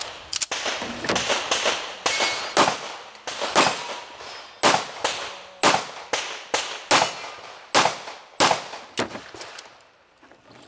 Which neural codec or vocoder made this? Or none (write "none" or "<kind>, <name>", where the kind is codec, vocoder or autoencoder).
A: none